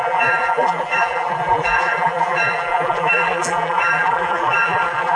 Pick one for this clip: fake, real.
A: fake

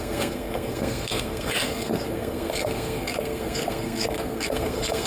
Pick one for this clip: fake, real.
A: fake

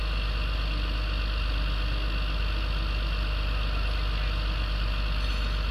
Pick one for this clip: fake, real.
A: real